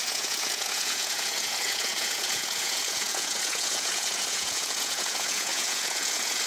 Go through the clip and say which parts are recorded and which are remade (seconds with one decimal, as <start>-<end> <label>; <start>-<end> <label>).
0.0-6.5 remade